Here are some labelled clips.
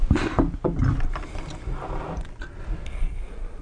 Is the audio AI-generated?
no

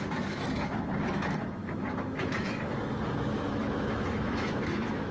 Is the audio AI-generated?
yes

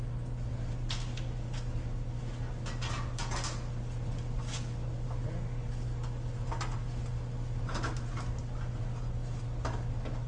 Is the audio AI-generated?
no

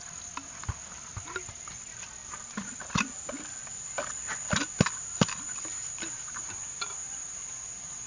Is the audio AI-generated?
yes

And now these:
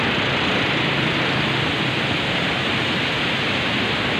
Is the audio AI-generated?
no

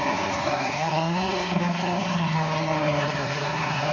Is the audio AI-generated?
yes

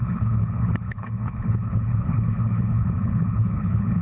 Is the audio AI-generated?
yes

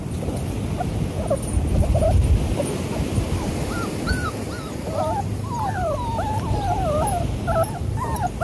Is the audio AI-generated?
yes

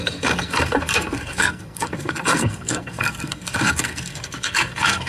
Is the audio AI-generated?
yes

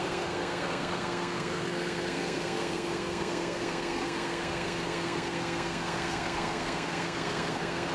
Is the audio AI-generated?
yes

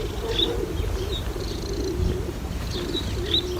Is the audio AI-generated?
no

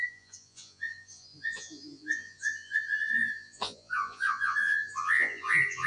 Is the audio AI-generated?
yes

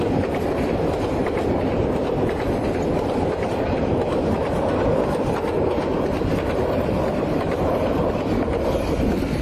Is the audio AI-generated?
no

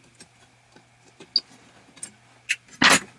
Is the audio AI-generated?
no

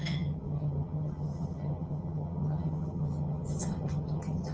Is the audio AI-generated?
yes